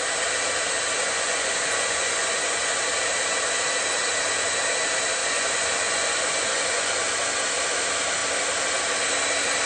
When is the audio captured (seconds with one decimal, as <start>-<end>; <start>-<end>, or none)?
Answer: 0.0-1.0; 2.8-5.2; 7.0-9.7